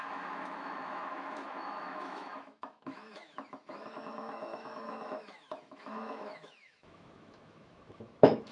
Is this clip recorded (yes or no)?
no